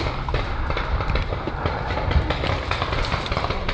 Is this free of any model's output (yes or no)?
yes